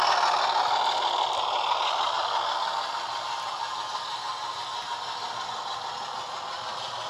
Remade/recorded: recorded